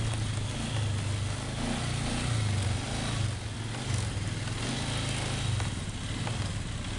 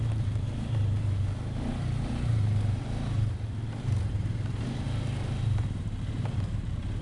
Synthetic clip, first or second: second